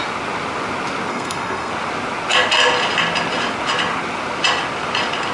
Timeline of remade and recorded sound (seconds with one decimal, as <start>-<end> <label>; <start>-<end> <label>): 0.0-1.1 recorded; 1.1-1.7 remade; 1.7-5.3 recorded